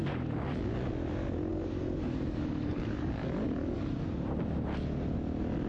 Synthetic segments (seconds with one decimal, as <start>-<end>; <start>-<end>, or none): 1.5-3.8